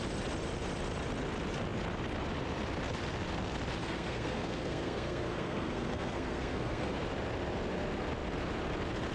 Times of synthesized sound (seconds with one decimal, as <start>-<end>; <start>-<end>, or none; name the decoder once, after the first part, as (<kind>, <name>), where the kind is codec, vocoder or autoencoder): 3.8-7.0 (codec, SNAC)